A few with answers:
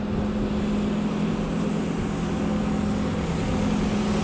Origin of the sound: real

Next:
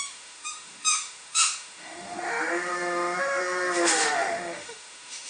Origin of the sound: fake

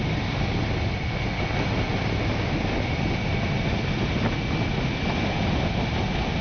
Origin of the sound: real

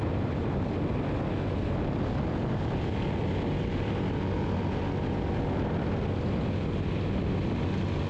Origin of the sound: real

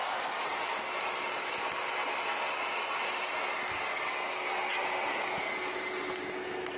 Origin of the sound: real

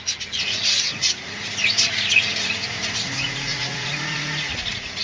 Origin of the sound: fake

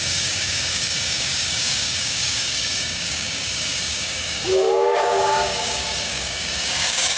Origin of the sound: fake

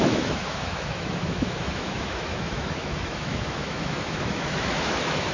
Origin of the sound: fake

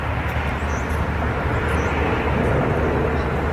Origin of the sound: real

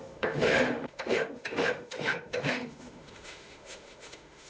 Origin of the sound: fake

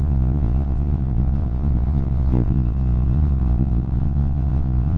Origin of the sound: fake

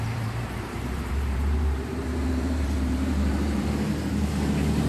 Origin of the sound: fake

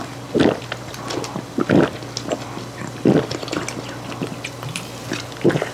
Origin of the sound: real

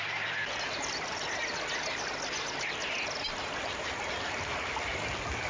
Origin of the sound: real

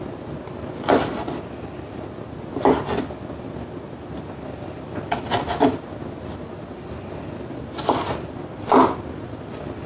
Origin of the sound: real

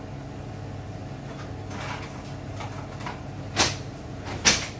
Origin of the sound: real